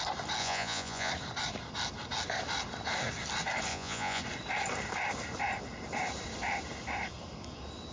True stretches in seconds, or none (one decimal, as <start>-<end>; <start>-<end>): 0.0-0.4; 1.1-3.7; 4.2-7.9